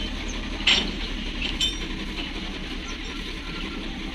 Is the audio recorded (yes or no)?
yes